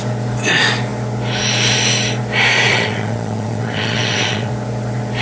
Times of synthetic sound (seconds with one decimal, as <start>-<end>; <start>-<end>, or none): 2.7-4.5